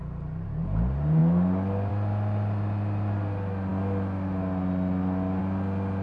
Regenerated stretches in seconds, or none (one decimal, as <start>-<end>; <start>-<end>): none